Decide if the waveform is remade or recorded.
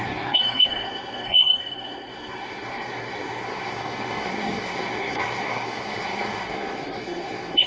remade